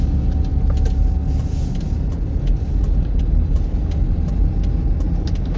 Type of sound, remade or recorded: recorded